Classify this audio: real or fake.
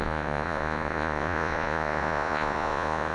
fake